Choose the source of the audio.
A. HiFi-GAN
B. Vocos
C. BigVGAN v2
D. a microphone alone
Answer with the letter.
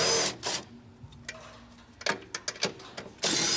D